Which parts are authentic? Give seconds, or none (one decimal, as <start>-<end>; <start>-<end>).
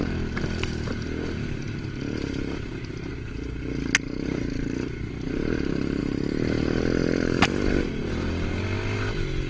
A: 0.0-9.5